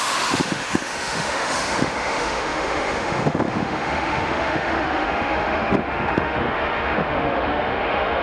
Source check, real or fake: fake